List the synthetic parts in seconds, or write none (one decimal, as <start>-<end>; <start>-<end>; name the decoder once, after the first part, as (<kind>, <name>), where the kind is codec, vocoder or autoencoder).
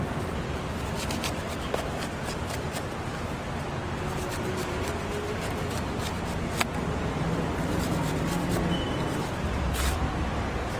none